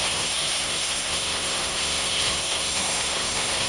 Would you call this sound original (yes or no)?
no